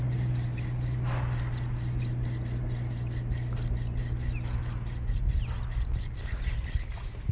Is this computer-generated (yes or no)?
no